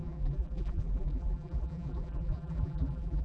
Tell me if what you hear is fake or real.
fake